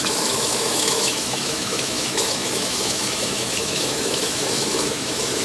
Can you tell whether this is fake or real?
fake